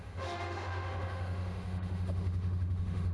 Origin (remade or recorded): remade